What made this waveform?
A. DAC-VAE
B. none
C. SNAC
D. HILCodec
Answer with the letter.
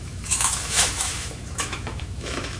A